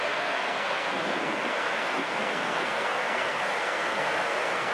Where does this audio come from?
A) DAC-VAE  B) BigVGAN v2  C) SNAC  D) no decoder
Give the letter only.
C